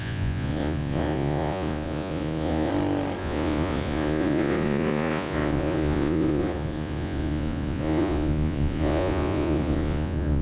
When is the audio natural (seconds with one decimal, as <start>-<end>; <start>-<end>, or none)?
2.7-3.2